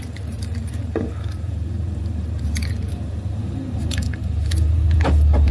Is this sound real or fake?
fake